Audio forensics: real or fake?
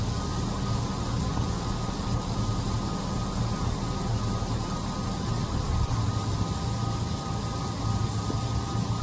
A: real